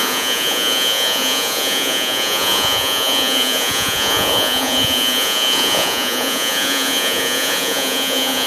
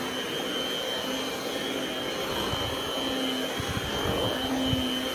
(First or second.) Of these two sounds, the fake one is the first